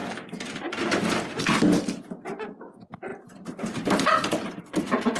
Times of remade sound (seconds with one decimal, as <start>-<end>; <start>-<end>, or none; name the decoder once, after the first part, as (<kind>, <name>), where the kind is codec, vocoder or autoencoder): 0.0-1.4 (vocoder, BigVGAN v2); 3.1-4.6

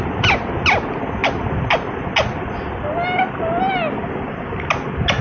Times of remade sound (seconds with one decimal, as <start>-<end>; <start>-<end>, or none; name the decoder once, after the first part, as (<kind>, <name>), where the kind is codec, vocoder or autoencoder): none

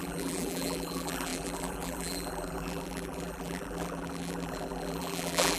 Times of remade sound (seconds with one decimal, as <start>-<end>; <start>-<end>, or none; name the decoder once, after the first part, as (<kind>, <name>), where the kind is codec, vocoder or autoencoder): 0.0-5.6 (vocoder, BigVGAN v2)